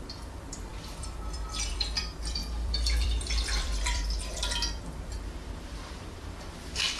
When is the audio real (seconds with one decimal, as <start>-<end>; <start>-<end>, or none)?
none